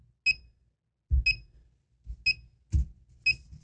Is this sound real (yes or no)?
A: yes